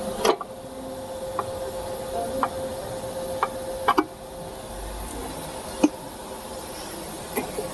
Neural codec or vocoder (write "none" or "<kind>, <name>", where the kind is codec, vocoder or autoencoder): none